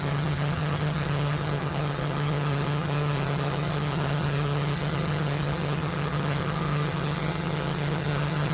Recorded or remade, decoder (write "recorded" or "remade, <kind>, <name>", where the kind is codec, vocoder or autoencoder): remade, vocoder, HiFi-GAN